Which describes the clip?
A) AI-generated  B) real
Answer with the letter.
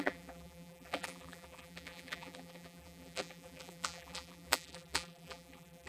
A